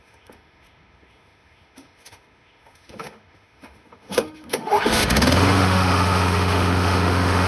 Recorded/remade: remade